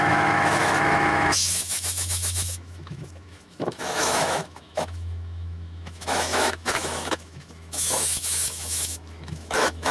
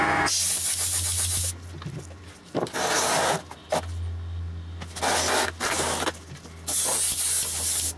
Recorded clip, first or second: second